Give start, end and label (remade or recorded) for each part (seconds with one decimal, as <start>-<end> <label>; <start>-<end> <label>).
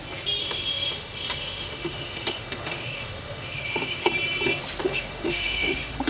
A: 0.0-0.4 recorded; 0.4-4.1 remade; 4.1-4.8 recorded; 4.8-6.1 remade